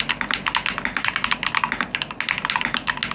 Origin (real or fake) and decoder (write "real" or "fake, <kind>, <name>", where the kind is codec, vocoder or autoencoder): real